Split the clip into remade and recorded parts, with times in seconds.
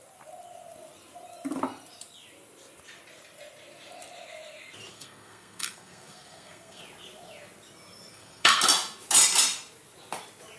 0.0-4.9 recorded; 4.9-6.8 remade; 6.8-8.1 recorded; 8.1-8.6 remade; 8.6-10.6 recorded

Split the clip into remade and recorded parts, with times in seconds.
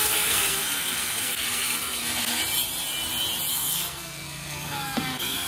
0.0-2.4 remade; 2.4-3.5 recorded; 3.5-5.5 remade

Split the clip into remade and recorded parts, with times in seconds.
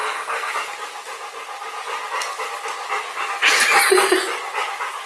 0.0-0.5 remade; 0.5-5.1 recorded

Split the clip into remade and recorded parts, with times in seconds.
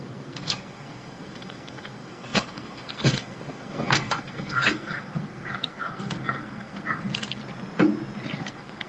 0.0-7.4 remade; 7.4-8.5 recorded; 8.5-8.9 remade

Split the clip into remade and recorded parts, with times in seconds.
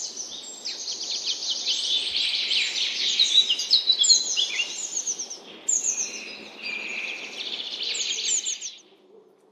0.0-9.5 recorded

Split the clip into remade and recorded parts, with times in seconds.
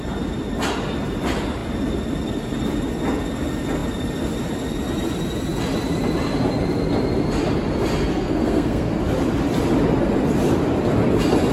0.0-8.1 recorded; 8.1-8.9 remade; 8.9-11.5 recorded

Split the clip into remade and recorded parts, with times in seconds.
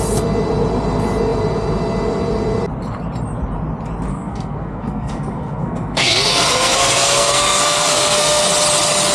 0.0-4.1 recorded; 4.1-8.5 remade; 8.5-9.1 recorded